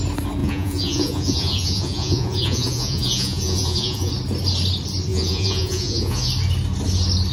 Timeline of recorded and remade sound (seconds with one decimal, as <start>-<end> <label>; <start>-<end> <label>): 0.0-0.4 recorded; 0.4-4.1 remade; 4.1-5.1 recorded; 5.1-6.3 remade; 6.3-7.3 recorded